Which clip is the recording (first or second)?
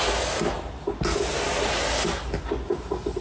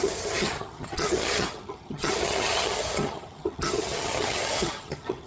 first